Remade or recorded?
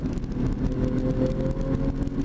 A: recorded